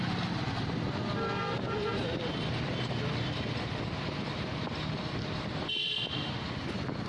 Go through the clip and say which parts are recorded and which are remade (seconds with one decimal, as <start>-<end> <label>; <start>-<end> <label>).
0.0-2.0 recorded; 2.0-6.1 remade; 6.1-7.1 recorded